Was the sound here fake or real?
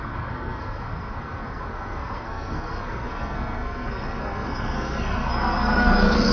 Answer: fake